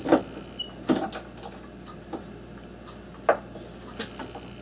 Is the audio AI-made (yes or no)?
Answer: no